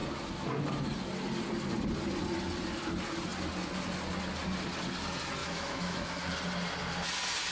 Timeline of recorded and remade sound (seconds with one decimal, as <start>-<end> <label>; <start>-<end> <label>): 0.0-5.4 recorded; 5.4-6.2 remade; 6.2-7.5 recorded